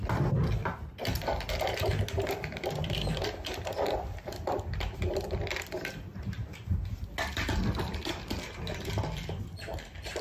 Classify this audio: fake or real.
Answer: real